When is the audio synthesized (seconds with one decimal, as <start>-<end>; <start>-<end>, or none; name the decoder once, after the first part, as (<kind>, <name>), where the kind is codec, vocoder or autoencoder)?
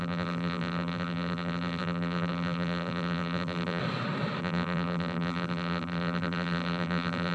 0.0-3.8 (vocoder, BigVGAN v2); 4.4-7.3